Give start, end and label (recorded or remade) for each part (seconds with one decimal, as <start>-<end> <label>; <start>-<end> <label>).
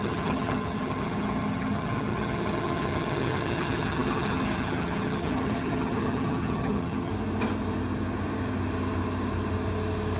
0.0-7.1 remade; 7.1-10.2 recorded